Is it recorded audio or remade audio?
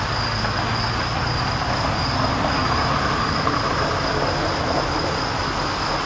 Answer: recorded